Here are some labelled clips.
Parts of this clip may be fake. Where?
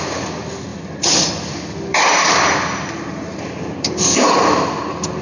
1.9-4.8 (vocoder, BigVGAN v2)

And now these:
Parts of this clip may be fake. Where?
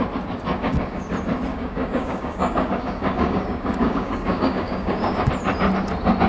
0.6-1.1 (codec, DAC); 1.5-5.3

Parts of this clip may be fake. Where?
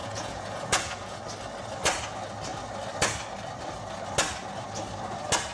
0.0-1.2 (vocoder, Vocos)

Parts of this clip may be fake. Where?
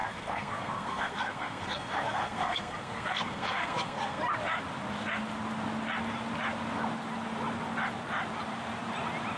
0.0-4.2 (codec, SNAC)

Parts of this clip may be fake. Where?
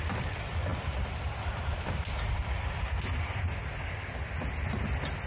none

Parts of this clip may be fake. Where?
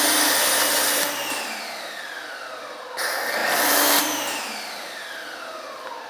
none